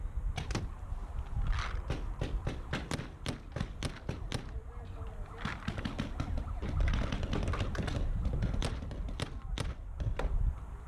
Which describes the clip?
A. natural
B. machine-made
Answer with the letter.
A